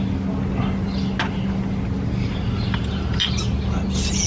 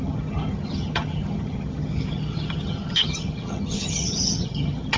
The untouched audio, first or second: first